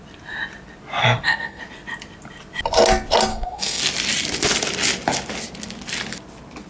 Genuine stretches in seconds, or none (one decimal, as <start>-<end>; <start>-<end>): 0.0-1.0; 1.6-3.3; 3.8-6.7